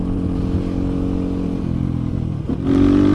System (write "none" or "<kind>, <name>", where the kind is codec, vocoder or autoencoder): none